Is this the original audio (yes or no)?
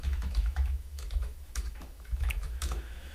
no